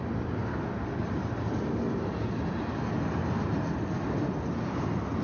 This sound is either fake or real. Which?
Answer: real